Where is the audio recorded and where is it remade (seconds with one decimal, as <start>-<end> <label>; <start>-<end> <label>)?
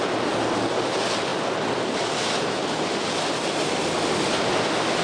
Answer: 0.0-5.0 recorded